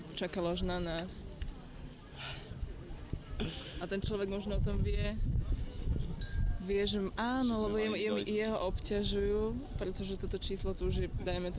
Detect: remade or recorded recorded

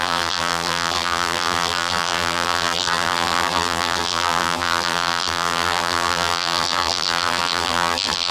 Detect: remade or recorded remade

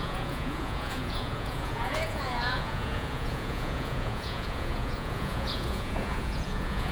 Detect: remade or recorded remade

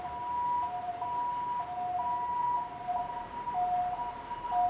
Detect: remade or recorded recorded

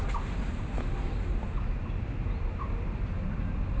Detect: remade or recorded recorded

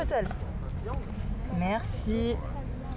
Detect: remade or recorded recorded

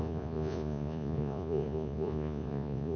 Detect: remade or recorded remade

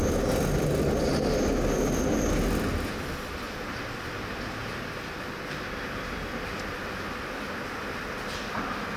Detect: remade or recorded recorded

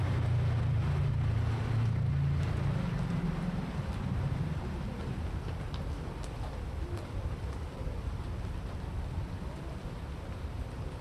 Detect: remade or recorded recorded